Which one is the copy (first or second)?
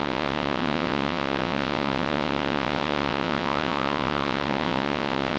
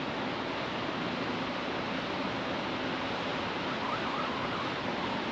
first